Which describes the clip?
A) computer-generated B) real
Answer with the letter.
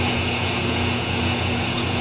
A